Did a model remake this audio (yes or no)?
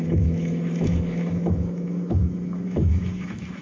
yes